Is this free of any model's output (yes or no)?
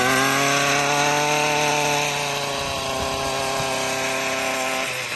yes